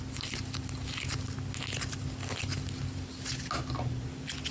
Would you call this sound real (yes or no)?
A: yes